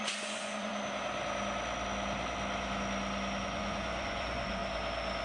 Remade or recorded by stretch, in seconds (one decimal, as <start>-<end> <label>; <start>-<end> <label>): 0.0-0.7 remade; 0.7-3.4 recorded; 3.4-4.6 remade; 4.6-5.2 recorded